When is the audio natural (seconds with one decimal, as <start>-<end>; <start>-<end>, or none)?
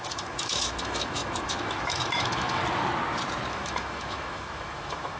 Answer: 2.6-3.5